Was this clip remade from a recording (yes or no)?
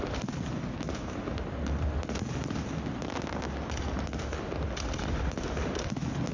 no